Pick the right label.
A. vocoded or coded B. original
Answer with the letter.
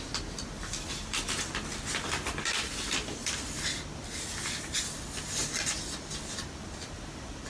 B